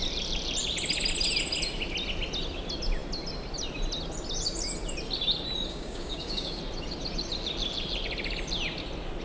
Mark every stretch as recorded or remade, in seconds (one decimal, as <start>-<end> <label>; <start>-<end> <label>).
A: 0.0-5.7 recorded; 5.7-6.6 remade; 6.6-9.2 recorded